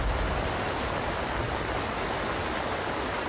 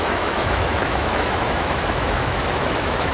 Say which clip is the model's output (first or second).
second